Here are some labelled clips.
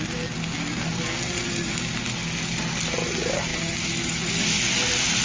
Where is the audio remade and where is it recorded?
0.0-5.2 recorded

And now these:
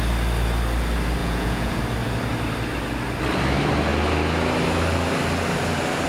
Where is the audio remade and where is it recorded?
0.0-1.2 recorded; 1.2-1.8 remade; 1.8-6.1 recorded

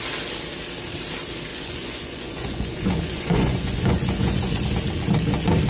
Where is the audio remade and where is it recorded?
0.0-1.5 recorded; 1.5-4.6 remade; 4.6-5.7 recorded